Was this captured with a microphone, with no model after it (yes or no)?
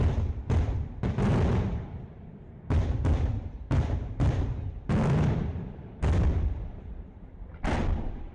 yes